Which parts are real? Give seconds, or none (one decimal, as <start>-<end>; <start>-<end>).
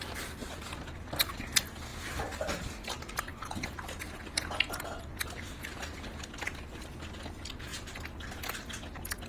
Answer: 0.0-9.3